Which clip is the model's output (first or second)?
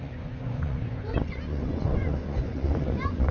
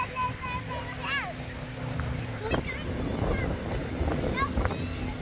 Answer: first